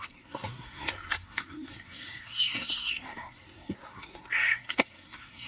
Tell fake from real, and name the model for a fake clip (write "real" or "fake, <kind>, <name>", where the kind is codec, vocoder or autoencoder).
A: fake, codec, SNAC